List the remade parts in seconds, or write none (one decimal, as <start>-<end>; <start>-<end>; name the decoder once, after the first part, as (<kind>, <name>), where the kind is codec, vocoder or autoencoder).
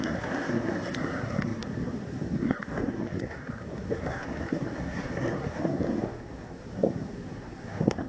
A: 0.0-8.1 (codec, SNAC)